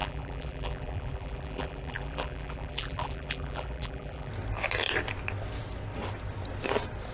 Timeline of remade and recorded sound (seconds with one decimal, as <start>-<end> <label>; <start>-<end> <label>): 0.0-4.3 remade; 4.3-7.1 recorded